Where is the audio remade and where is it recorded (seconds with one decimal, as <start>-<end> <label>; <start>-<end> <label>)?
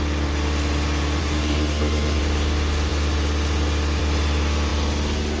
0.0-1.2 recorded; 1.2-2.2 remade; 2.2-5.4 recorded